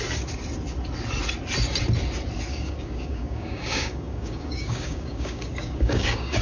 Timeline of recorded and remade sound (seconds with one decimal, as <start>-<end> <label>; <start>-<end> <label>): 0.0-2.5 recorded; 2.5-6.4 remade

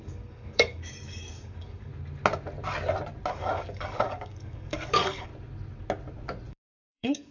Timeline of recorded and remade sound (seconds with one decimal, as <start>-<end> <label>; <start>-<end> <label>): 0.0-1.9 remade; 1.9-3.3 recorded; 3.3-5.3 remade; 5.3-6.5 recorded; 6.5-7.3 remade

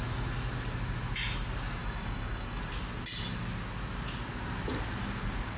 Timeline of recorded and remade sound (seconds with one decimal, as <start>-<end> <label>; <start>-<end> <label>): 0.0-1.8 recorded; 1.8-2.6 remade; 2.6-5.6 recorded